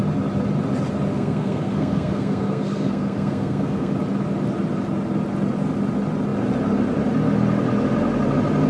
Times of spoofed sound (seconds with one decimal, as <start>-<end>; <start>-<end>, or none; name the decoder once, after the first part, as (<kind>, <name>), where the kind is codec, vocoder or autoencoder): 1.1-3.9 (codec, SNAC)